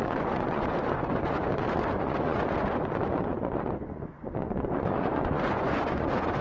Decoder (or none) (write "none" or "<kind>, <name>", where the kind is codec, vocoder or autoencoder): vocoder, Vocos